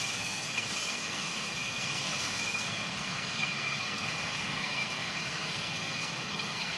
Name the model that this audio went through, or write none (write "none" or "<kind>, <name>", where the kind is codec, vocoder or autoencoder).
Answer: codec, SNAC